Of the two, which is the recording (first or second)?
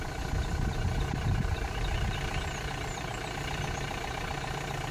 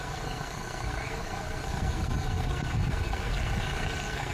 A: first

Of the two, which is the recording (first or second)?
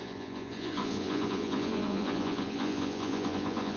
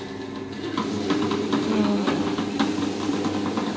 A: second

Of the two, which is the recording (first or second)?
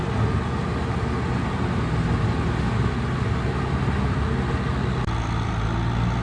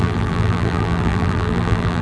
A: first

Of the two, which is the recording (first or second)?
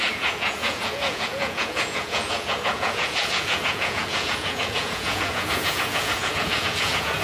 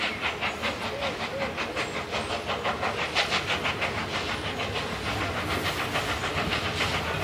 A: second